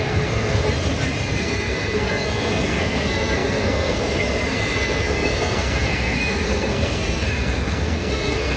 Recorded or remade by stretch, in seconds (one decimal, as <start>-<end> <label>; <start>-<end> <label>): 0.0-0.6 remade; 0.6-1.3 recorded; 1.3-8.6 remade